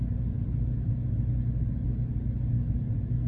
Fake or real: real